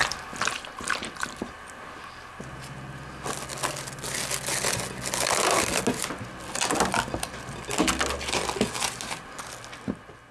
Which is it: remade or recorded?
recorded